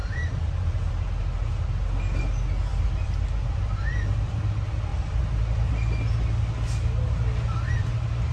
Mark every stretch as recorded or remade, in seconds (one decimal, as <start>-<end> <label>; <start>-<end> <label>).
0.0-0.9 remade; 0.9-2.7 recorded; 2.7-4.4 remade; 4.4-8.3 recorded